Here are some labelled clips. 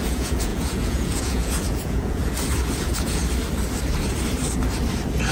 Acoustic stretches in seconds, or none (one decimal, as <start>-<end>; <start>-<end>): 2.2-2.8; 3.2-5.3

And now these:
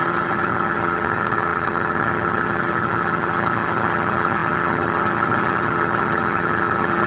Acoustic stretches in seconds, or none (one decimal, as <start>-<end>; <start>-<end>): none

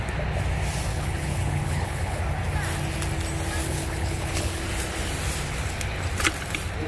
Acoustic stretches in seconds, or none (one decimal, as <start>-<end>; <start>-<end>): 0.0-0.9; 2.2-3.6; 4.6-6.9

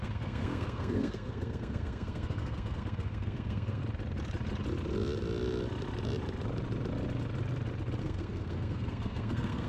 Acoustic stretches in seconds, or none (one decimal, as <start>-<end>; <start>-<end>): 3.8-8.0

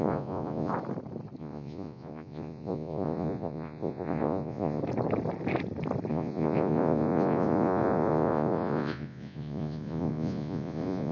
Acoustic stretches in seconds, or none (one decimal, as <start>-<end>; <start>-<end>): 0.7-1.4; 4.8-6.1

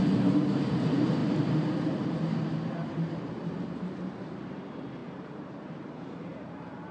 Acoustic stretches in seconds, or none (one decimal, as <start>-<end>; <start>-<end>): none

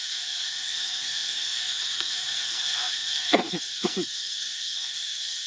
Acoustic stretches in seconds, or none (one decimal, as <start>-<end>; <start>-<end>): none

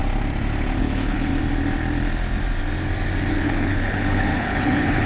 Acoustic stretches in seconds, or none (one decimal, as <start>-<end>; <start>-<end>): 0.0-0.8; 1.3-3.3